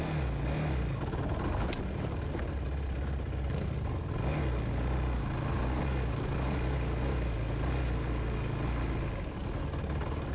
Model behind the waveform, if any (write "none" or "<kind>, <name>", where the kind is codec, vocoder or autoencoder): none